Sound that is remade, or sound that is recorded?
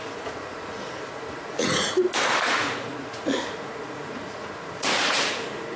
remade